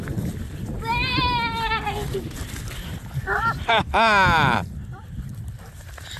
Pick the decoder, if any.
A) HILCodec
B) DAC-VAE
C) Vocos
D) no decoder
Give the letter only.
D